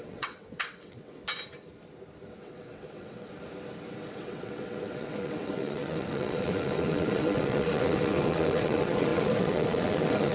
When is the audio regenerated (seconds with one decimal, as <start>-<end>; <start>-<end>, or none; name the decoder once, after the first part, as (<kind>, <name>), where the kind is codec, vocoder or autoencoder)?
0.0-1.2 (vocoder, WaveNeXt); 2.4-3.3; 4.1-10.3